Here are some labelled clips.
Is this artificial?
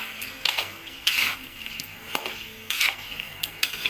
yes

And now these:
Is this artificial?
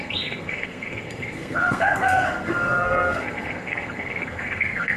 yes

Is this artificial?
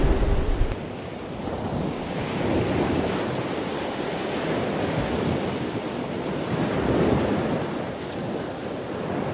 no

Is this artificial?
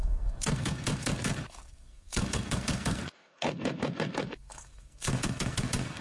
yes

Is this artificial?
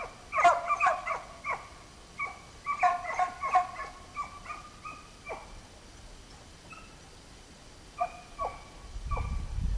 no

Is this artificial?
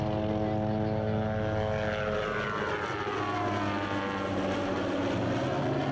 no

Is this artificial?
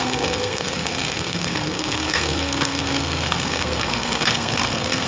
yes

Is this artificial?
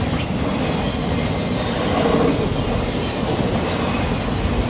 no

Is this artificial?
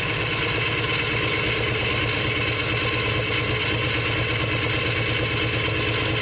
no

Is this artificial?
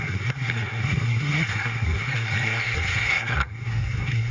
yes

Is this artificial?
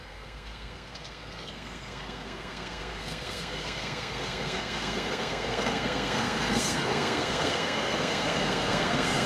yes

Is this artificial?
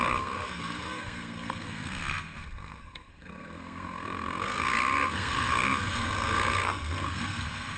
yes